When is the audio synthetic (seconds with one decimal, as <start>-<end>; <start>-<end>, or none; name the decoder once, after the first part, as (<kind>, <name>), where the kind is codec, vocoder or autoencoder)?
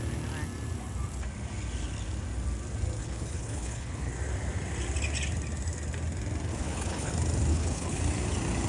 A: 3.0-4.1 (codec, HILCodec); 6.5-7.1; 7.5-8.0